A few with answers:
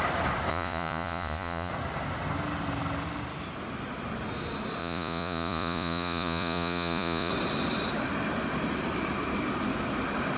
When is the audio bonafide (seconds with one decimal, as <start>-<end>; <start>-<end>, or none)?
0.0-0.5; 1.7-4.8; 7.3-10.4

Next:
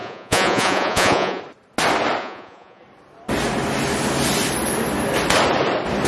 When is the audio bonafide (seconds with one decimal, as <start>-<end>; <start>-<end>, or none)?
1.4-2.2; 2.8-6.1

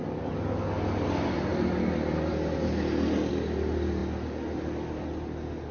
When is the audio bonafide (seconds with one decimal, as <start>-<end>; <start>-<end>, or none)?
0.0-5.7

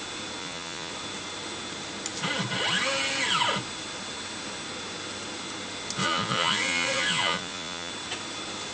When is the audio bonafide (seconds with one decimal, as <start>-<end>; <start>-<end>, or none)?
0.0-0.4; 0.9-6.0; 7.9-8.7